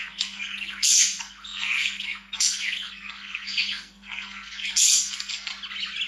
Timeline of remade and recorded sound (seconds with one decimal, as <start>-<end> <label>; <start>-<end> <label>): 0.0-5.5 remade; 5.5-6.1 recorded